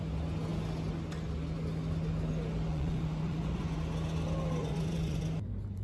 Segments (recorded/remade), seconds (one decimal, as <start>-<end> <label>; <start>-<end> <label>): 0.0-2.7 recorded; 2.7-3.8 remade; 3.8-4.6 recorded; 4.6-5.2 remade; 5.2-5.8 recorded